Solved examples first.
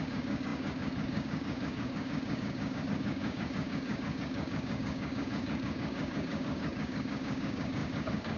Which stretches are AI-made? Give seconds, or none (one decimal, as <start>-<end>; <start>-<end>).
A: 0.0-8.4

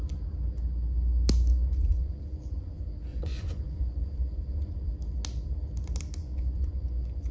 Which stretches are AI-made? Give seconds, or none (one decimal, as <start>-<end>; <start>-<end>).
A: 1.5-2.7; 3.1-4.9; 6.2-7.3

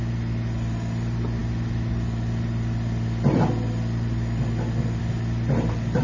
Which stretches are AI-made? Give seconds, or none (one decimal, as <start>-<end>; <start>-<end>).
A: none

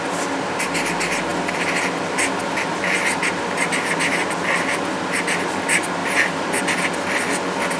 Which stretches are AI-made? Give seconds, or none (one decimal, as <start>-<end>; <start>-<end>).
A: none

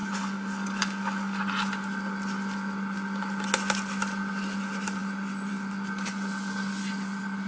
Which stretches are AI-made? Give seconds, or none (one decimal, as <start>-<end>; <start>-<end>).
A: 0.0-1.4